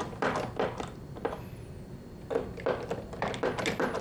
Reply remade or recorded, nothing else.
recorded